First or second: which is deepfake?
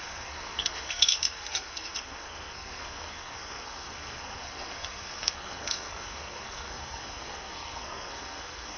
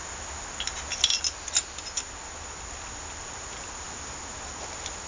first